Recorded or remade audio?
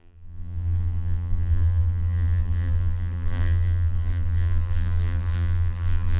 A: remade